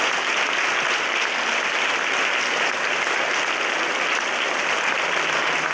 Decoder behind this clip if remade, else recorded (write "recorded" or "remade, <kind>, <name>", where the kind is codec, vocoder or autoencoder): recorded